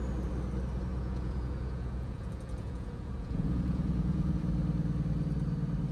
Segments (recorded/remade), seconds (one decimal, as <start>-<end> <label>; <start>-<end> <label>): 0.0-0.9 recorded; 0.9-4.4 remade; 4.4-5.9 recorded